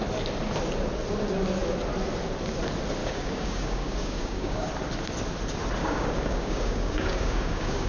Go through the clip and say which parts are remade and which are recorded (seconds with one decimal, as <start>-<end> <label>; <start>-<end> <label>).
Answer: 0.0-3.0 recorded; 3.0-4.7 remade; 4.7-5.8 recorded; 5.8-7.9 remade